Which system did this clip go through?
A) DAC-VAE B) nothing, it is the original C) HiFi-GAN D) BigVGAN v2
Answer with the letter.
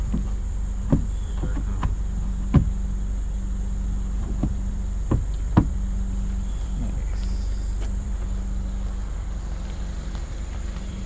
D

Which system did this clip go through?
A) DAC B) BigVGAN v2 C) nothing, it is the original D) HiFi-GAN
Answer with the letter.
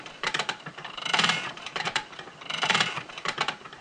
B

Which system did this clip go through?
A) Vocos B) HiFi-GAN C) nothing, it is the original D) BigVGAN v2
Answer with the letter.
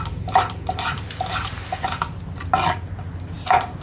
C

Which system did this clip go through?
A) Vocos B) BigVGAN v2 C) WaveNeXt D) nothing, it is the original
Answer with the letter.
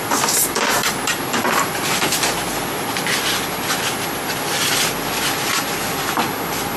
D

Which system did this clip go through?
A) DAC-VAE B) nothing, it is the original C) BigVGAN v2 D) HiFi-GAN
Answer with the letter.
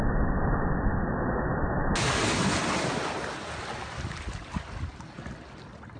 B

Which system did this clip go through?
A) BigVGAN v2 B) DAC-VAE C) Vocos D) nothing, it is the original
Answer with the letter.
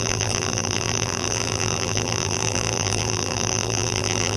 A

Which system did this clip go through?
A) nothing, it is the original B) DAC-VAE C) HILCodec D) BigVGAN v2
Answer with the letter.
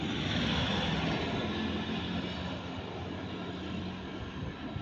A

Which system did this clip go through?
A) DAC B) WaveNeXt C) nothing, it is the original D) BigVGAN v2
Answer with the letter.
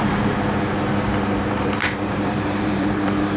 D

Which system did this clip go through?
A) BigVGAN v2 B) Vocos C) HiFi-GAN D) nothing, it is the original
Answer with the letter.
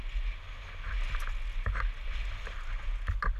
D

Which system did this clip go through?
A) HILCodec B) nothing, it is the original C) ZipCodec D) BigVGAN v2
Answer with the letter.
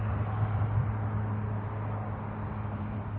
B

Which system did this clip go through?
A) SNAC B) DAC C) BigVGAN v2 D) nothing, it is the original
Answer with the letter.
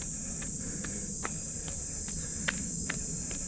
C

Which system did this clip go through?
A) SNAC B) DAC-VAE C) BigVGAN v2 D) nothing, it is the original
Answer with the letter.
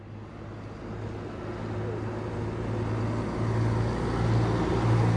D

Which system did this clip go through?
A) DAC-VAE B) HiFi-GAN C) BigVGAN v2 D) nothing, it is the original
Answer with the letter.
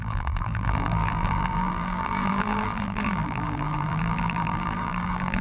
C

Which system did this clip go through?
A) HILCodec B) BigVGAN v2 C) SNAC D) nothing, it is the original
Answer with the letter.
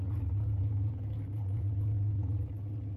D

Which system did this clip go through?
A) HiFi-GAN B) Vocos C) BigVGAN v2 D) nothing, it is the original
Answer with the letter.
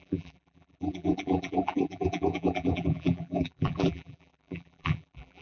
C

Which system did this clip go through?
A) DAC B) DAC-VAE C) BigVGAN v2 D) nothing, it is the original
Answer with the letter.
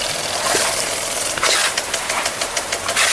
C